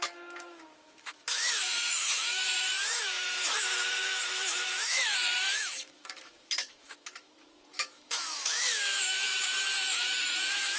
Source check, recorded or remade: remade